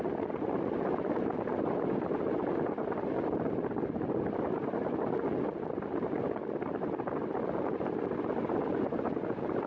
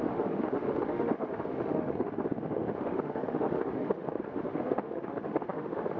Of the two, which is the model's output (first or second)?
second